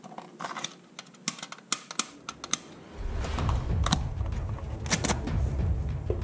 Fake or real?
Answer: real